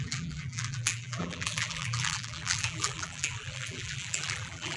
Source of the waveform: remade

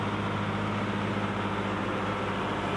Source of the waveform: recorded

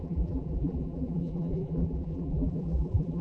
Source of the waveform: remade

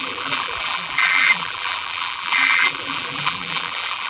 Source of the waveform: remade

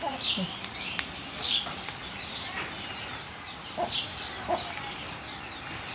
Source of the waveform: recorded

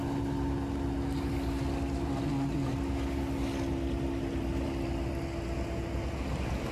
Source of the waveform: recorded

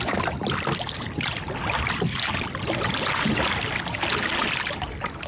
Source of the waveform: recorded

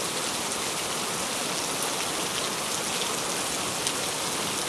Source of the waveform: recorded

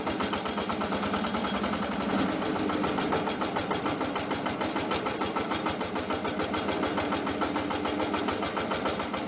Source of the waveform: recorded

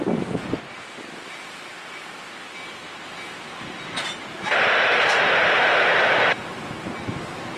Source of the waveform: recorded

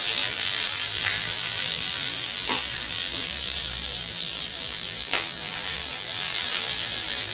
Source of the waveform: remade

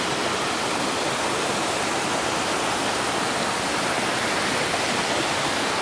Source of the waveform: recorded